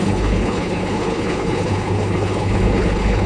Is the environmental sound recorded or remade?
remade